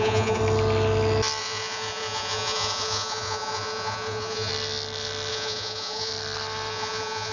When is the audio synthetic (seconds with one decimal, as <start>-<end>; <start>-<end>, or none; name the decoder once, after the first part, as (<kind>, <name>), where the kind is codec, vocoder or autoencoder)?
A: 0.0-0.4 (vocoder, Vocos); 1.4-4.5; 5.3-6.1; 6.7-7.3